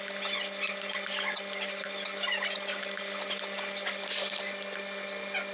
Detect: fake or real real